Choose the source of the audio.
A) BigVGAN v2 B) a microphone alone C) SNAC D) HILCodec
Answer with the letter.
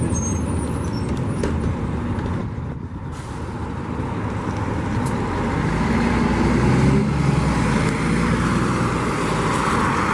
B